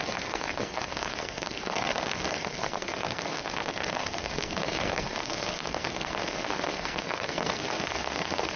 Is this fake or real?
fake